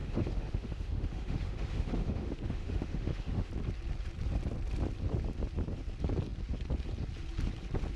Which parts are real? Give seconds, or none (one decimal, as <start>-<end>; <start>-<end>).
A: 3.5-8.0